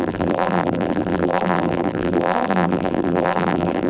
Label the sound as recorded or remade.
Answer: remade